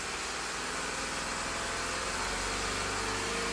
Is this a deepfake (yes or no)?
no